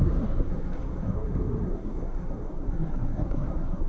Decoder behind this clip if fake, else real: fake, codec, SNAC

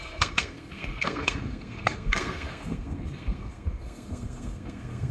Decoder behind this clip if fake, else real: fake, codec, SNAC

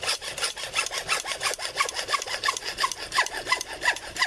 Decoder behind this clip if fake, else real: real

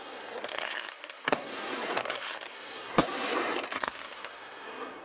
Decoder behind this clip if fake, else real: fake, codec, SNAC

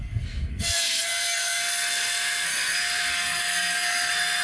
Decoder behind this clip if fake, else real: fake, codec, SNAC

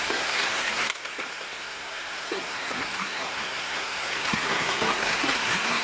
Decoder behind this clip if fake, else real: fake, codec, SNAC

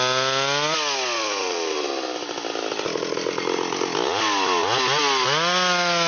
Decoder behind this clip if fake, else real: real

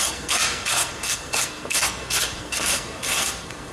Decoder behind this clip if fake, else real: fake, codec, SNAC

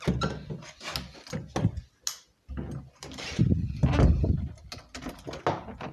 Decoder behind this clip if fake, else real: real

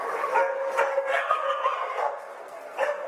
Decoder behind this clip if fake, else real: fake, codec, SNAC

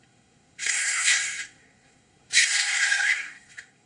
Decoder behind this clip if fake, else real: fake, codec, SNAC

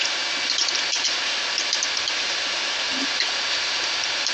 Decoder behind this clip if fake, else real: real